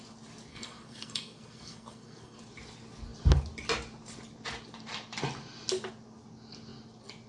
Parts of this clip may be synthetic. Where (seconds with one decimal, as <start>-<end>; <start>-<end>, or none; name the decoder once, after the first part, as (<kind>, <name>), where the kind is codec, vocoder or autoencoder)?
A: 0.5-2.4 (codec, SNAC)